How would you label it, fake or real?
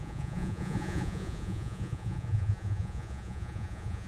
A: fake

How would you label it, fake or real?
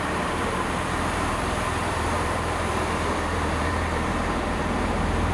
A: fake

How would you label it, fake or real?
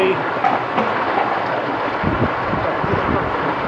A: real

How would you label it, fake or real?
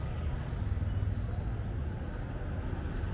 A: real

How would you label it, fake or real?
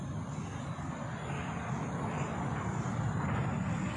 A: real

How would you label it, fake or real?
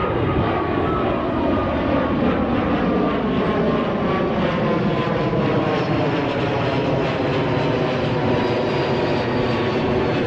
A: real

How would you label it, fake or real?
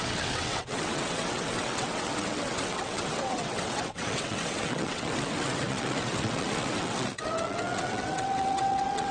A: fake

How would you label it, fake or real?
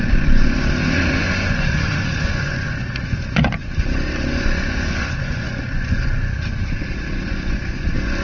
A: fake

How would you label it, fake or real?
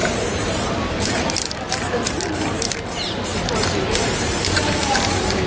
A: fake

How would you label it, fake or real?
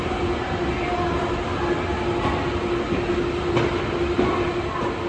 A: real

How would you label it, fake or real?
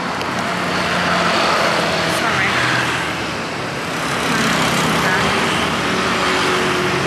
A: real